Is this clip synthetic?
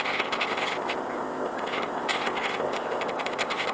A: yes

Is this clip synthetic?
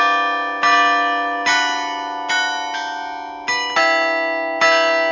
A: no